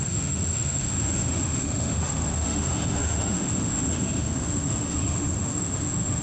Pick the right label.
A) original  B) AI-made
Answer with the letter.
B